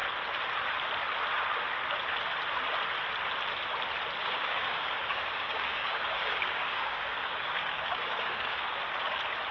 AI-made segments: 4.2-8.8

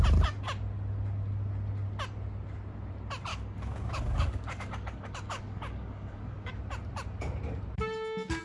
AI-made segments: 3.3-6.5

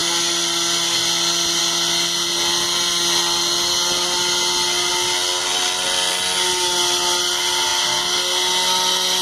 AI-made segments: none

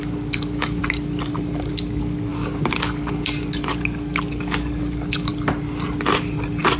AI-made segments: 0.0-0.8; 1.7-5.3

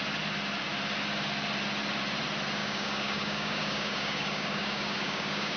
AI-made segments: 2.6-5.6

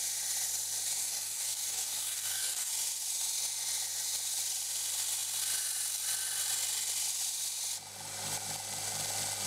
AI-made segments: 1.0-2.7